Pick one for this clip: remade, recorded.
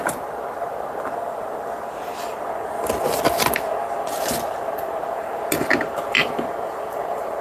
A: recorded